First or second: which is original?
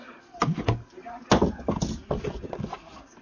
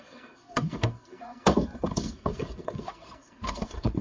first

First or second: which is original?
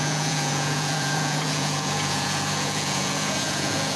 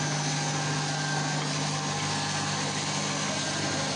second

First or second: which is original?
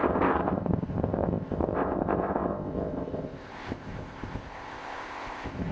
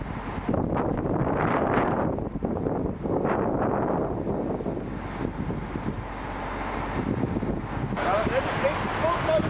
second